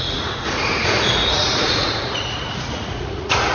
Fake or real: fake